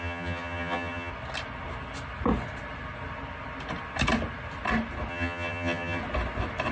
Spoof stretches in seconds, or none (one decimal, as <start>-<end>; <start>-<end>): 0.0-1.1; 5.1-6.0